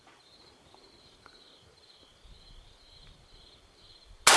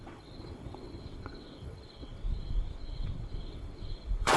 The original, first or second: first